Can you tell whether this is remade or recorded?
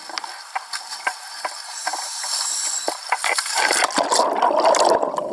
recorded